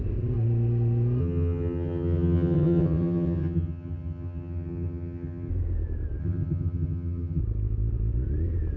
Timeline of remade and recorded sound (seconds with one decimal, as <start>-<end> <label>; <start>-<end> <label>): 0.0-1.2 recorded; 1.2-5.5 remade; 5.5-6.2 recorded; 6.2-7.4 remade; 7.4-8.8 recorded